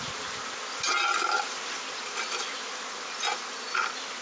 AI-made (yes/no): no